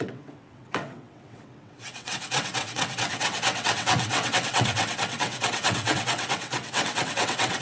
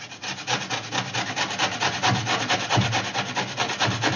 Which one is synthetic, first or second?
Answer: first